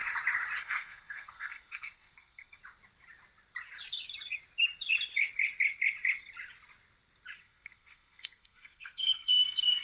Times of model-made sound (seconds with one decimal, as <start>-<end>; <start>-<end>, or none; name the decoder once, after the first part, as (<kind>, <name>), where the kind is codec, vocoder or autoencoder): 0.6-2.6 (codec, SNAC); 7.4-9.8